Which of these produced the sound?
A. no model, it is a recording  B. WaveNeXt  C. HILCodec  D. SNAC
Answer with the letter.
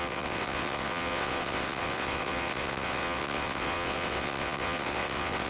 B